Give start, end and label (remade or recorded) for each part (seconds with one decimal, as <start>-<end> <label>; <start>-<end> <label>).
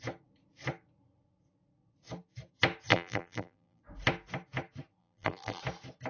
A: 0.0-2.9 recorded; 2.9-3.8 remade; 3.8-5.0 recorded; 5.0-5.6 remade; 5.6-6.1 recorded